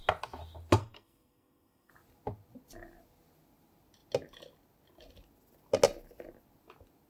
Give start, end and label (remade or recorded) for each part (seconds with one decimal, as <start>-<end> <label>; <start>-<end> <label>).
0.0-0.8 recorded; 0.8-1.9 remade; 1.9-7.1 recorded